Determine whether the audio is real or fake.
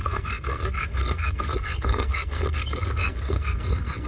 fake